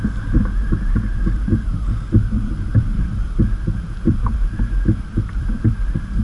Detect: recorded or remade remade